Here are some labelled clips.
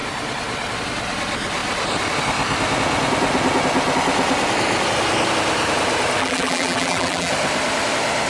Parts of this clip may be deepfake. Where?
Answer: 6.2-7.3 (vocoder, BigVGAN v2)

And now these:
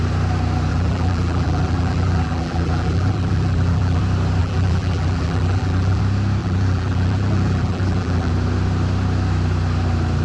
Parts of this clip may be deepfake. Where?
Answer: 0.7-4.0 (vocoder, BigVGAN v2); 4.4-6.0; 6.4-8.3